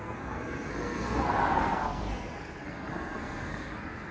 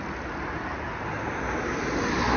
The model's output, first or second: first